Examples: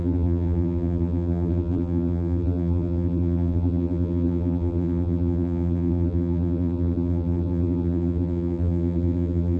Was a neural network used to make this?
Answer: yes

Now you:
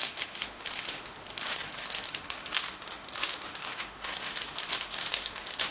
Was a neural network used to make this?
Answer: yes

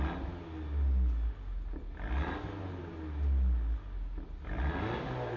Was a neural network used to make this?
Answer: no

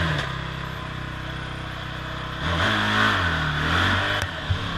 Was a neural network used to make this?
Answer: no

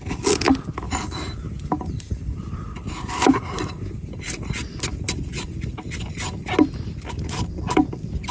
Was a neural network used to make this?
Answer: no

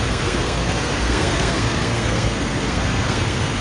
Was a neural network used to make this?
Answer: yes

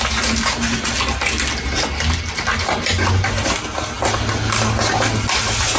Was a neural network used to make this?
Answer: no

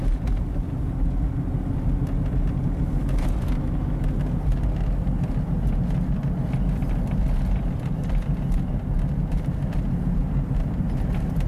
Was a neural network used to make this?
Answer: no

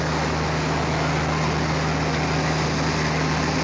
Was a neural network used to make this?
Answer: no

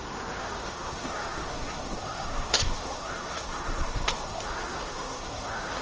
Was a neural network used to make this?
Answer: yes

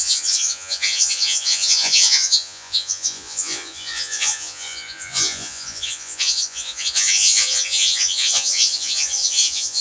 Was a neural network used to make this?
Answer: yes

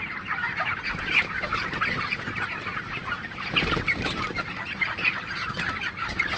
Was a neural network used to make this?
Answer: no